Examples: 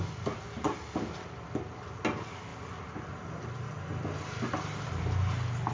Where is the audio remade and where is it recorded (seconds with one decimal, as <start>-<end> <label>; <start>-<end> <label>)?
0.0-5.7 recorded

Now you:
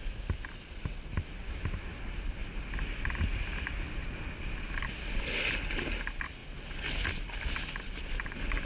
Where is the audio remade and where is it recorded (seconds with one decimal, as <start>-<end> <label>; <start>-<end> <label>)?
0.0-8.6 recorded

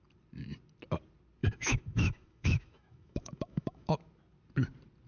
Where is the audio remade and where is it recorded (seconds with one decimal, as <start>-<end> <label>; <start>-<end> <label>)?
0.0-1.4 recorded; 1.4-4.0 remade; 4.0-5.1 recorded

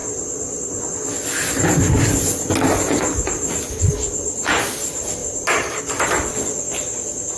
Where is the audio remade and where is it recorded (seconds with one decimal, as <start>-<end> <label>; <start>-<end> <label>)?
0.0-5.2 recorded; 5.2-5.8 remade; 5.8-7.4 recorded

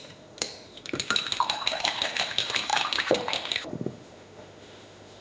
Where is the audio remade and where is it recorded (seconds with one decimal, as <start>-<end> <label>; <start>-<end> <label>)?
0.0-5.2 remade